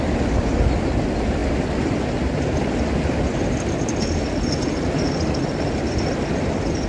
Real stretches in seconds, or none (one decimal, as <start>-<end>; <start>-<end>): 0.0-6.9